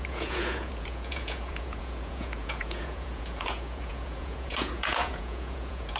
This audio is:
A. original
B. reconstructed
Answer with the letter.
B